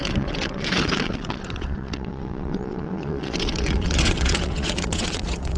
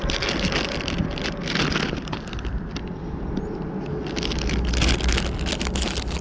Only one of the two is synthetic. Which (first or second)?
first